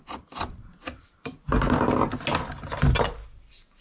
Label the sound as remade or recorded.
recorded